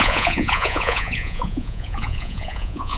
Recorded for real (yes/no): no